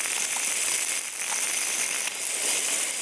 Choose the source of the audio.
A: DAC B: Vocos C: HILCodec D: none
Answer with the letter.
D